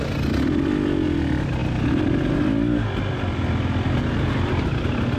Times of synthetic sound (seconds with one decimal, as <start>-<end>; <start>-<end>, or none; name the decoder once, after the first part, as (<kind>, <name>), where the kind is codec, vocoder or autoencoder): none